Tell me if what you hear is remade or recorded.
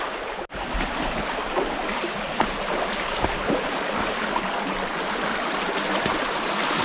recorded